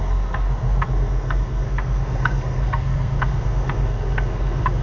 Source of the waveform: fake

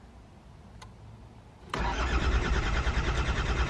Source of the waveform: real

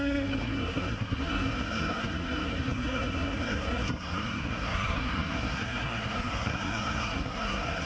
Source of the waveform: fake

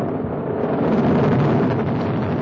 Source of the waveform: real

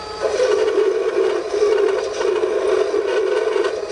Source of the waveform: real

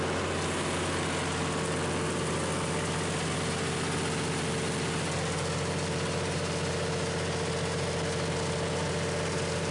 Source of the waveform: real